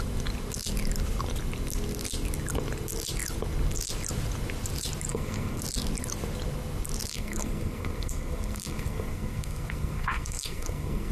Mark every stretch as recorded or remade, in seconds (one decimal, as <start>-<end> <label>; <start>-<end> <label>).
0.0-5.1 recorded; 5.1-5.6 remade; 5.6-7.1 recorded; 7.1-11.1 remade